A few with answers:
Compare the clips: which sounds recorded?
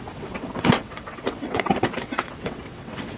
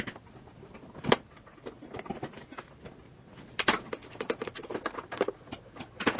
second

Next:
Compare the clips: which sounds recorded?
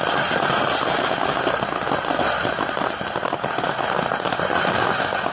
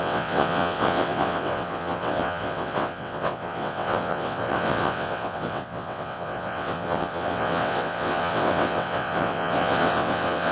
first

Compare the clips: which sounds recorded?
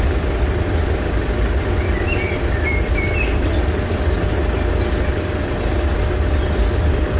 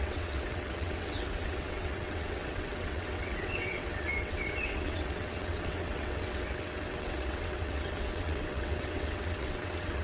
first